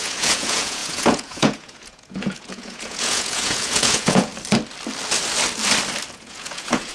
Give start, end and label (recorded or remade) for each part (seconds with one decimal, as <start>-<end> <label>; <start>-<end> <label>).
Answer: 0.0-4.3 remade; 4.3-6.1 recorded; 6.1-6.9 remade